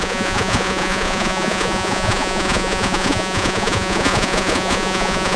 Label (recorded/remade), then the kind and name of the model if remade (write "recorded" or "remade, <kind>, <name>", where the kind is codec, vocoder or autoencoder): remade, vocoder, Vocos